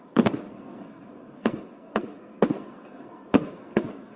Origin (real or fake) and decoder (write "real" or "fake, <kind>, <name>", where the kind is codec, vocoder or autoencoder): fake, codec, SNAC